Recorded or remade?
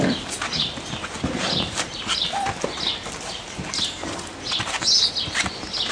recorded